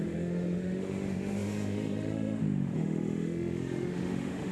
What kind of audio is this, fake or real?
fake